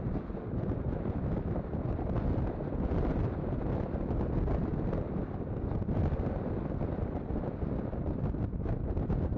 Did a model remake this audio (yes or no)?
no